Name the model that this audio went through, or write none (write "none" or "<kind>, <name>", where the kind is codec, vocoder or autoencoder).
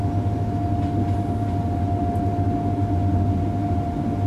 none